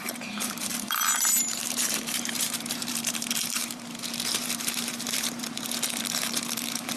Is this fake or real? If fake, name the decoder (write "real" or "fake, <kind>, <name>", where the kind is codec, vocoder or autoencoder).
fake, vocoder, BigVGAN v2